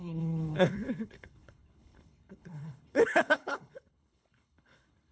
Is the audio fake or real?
fake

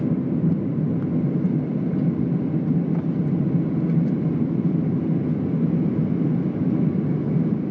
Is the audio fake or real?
real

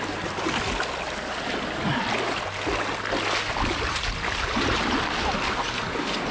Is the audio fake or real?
real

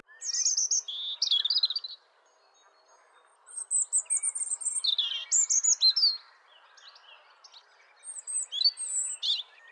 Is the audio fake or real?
real